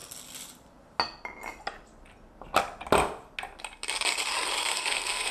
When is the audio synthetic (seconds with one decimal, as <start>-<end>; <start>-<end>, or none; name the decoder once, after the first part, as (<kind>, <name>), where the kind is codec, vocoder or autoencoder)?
4.7-5.3 (codec, SNAC)